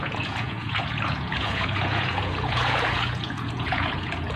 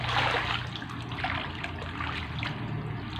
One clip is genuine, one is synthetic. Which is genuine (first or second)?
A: second